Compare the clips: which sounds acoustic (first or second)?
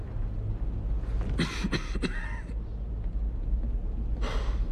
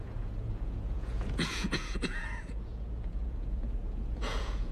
first